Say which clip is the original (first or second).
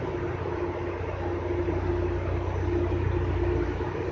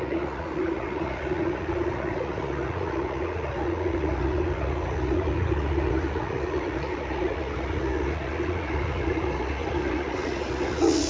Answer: first